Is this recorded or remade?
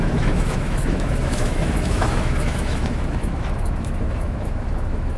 remade